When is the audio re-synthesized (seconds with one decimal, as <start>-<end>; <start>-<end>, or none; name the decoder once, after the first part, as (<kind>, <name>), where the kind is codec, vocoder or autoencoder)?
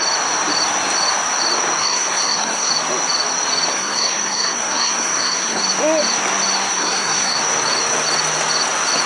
1.8-2.7 (codec, SNAC); 3.7-5.6; 6.7-7.4